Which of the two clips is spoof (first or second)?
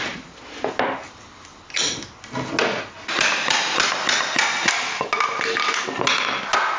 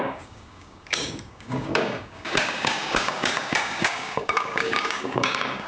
second